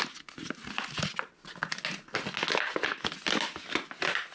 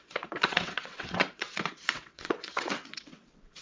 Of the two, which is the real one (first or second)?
first